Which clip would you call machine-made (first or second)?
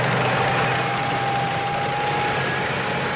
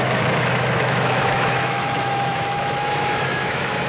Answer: second